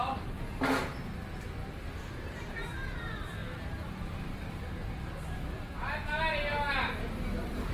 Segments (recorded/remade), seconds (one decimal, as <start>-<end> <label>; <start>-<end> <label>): 0.0-3.4 recorded; 3.4-5.1 remade; 5.1-7.7 recorded